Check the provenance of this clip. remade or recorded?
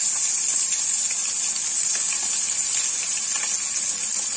recorded